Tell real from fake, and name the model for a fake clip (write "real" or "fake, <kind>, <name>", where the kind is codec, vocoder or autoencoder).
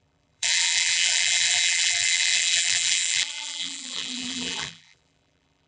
fake, vocoder, BigVGAN v2